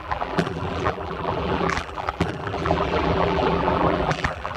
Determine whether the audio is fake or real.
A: fake